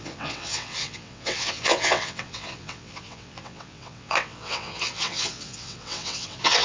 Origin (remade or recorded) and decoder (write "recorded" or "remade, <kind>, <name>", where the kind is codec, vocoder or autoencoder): remade, vocoder, WaveNeXt